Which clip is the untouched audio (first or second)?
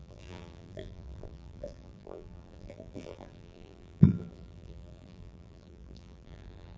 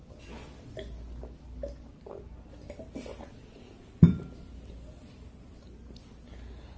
second